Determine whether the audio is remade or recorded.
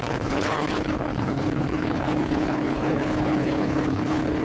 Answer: remade